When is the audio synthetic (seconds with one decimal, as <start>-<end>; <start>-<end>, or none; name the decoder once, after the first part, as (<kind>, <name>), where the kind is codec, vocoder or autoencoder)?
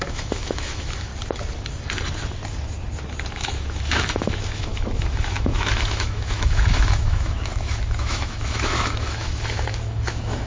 0.0-1.1 (autoencoder, DAC-VAE); 3.3-10.5